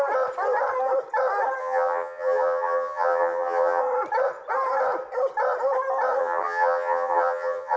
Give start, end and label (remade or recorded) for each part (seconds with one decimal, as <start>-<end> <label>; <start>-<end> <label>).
0.0-1.6 recorded; 1.6-3.8 remade; 3.8-6.2 recorded; 6.2-7.8 remade